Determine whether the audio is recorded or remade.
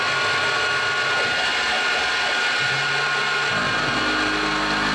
recorded